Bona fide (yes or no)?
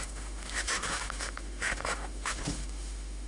no